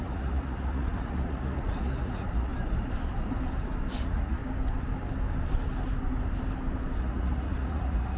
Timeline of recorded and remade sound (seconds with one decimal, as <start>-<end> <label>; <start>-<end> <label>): 0.0-2.5 remade; 2.5-4.0 recorded; 4.0-4.4 remade; 4.4-7.0 recorded; 7.0-8.2 remade